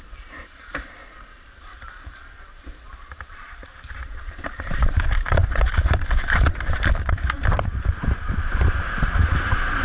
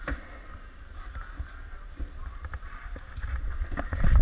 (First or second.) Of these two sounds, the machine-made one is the first